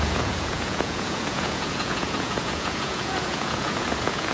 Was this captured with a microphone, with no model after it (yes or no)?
no